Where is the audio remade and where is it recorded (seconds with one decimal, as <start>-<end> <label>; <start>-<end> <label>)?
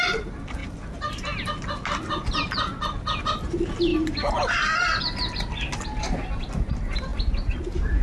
0.0-0.6 remade; 0.6-3.2 recorded; 3.2-8.0 remade